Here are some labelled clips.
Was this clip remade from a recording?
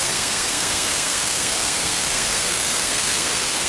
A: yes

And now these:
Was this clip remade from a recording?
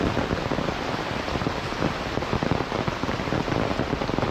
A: no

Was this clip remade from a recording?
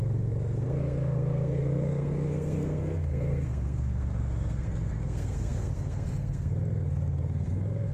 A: yes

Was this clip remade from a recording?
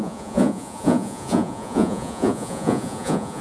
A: yes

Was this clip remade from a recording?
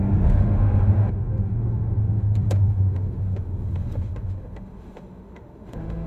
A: yes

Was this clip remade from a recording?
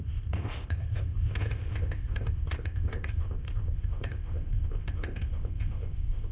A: yes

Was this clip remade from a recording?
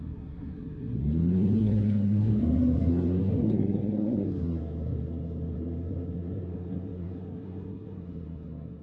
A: yes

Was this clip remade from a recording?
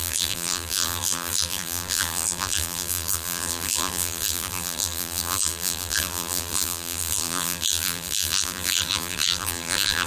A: yes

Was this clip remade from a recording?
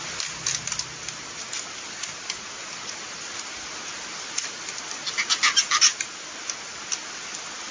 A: no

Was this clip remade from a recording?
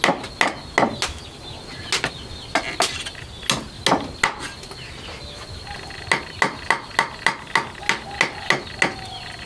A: no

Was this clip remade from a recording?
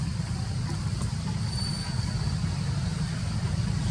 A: no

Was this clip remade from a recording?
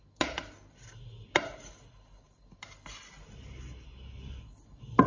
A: no